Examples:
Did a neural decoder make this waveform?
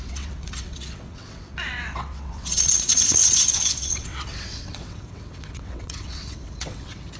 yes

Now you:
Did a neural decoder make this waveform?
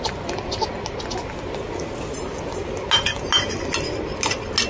no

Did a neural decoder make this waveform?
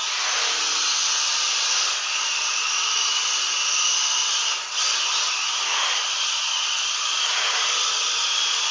no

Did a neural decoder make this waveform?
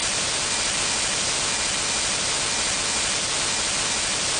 no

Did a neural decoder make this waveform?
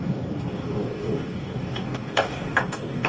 yes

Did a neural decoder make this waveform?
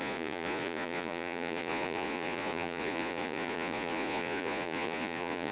yes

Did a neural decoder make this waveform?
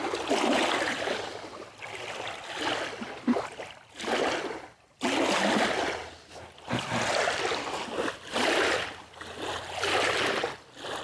no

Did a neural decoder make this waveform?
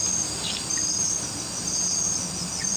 no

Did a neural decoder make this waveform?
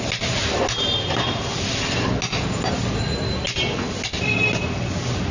no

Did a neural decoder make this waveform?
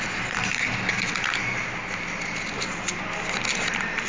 no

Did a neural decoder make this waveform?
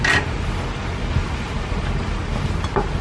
no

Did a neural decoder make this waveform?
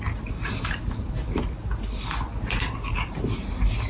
no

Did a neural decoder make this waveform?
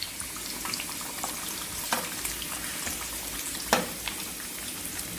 yes